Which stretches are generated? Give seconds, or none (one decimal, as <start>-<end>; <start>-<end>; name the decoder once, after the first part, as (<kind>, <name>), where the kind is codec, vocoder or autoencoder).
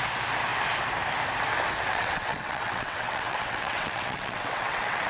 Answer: 1.9-5.1 (vocoder, WaveNeXt)